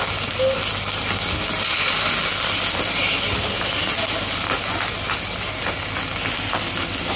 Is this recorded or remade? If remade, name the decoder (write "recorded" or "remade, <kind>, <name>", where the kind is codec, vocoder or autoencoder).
recorded